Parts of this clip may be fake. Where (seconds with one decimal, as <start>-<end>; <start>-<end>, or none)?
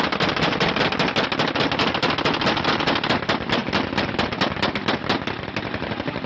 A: none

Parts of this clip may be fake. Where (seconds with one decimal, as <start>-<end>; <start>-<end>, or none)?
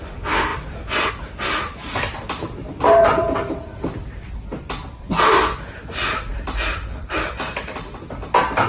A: 0.0-8.7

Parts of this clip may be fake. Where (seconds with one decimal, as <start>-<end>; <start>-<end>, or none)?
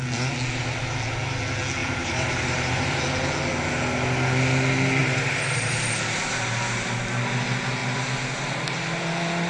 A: 1.8-3.0; 5.0-5.8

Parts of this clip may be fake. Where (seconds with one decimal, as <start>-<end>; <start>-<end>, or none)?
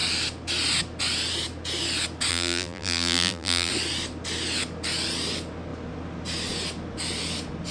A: 2.3-3.7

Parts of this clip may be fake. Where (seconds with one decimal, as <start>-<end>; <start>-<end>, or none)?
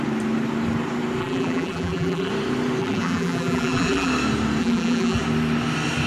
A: 1.2-2.3; 2.8-4.1; 4.6-5.2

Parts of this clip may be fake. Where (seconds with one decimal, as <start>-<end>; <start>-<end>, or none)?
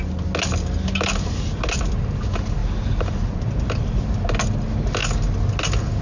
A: 2.6-4.0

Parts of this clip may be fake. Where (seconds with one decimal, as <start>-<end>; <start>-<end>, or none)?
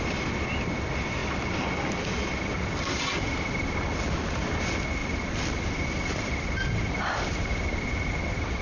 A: 1.2-4.6; 5.0-8.6